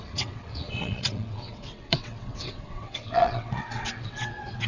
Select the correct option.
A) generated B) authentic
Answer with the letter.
A